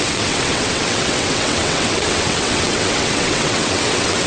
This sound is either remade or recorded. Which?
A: remade